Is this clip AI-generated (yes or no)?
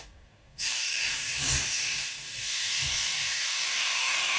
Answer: yes